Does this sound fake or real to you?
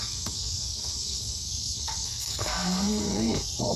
fake